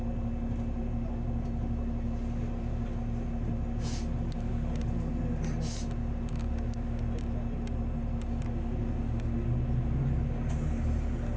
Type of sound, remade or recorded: recorded